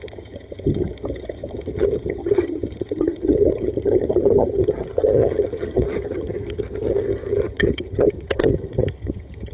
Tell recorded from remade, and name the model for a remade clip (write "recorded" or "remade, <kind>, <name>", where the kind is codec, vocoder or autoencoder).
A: remade, vocoder, HiFi-GAN